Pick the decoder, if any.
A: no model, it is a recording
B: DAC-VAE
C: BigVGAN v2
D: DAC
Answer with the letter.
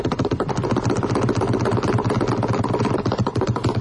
A